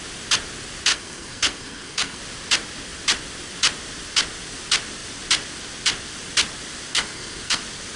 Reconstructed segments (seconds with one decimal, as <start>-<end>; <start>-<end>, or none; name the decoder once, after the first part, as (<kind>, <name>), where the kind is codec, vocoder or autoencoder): 0.9-2.2 (codec, SNAC); 6.9-7.6